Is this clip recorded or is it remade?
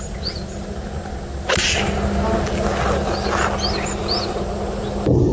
recorded